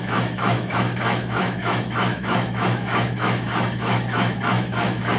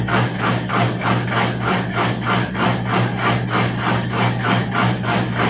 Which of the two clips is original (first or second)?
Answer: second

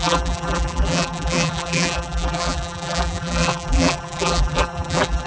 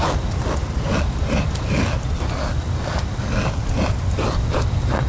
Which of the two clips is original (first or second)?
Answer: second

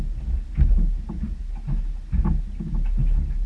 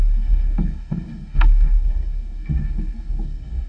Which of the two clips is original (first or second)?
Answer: first